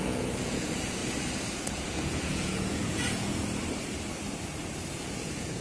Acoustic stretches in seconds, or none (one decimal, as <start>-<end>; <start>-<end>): 1.0-1.6; 3.3-4.9